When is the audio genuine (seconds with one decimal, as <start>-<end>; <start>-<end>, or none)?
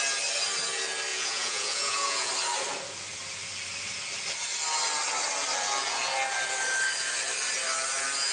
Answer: 0.0-1.1; 2.3-8.3